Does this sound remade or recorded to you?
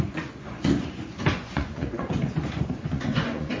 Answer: remade